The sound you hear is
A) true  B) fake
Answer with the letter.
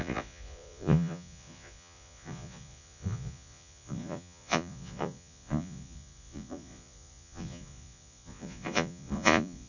B